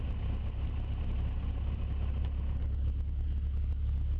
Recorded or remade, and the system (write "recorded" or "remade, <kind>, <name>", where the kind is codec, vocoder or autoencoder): recorded